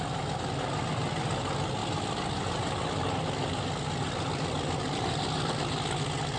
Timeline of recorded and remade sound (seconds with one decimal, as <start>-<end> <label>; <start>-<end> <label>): 0.0-6.4 recorded